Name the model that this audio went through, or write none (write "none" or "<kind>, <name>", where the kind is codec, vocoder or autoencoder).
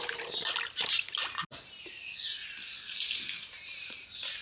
none